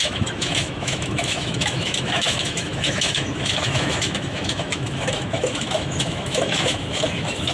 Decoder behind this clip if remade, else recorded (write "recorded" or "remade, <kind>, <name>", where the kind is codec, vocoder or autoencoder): remade, autoencoder, DAC-VAE